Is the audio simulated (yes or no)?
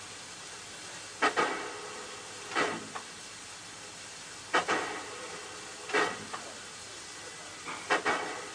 no